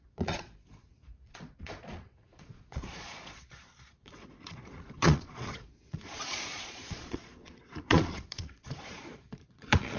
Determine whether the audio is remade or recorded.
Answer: remade